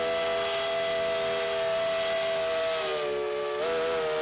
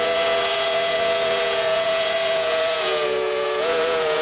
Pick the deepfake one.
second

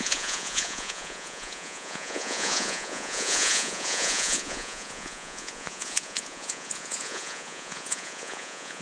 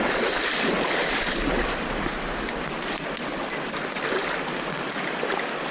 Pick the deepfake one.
first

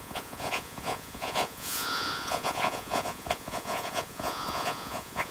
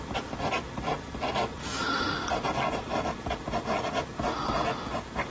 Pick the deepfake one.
first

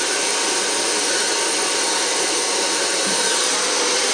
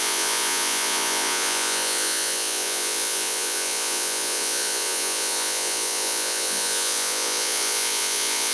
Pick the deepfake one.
second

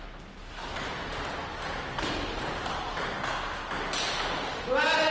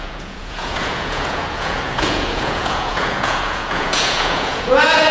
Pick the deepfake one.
second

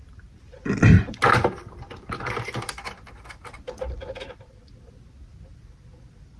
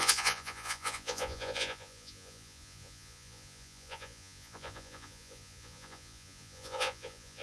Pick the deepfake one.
second